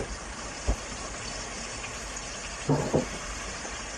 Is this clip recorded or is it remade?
recorded